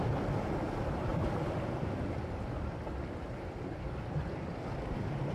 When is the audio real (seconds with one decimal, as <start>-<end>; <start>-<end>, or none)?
0.0-5.3